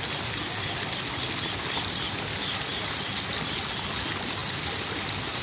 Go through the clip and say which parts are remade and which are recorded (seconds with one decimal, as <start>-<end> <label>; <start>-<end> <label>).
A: 0.0-5.4 recorded

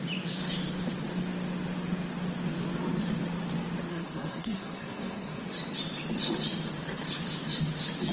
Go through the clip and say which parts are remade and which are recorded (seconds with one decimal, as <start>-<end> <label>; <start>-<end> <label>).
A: 0.0-3.9 recorded; 3.9-5.4 remade; 5.4-8.1 recorded

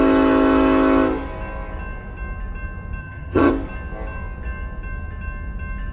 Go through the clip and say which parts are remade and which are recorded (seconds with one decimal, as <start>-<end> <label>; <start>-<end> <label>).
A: 0.0-3.0 recorded; 3.0-3.5 remade; 3.5-5.9 recorded